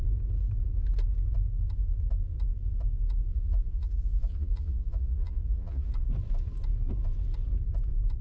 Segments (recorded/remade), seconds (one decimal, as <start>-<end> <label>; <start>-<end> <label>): 0.0-3.3 recorded; 3.3-5.9 remade; 5.9-8.2 recorded